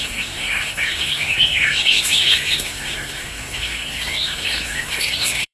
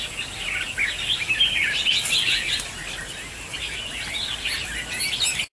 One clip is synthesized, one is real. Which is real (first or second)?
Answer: second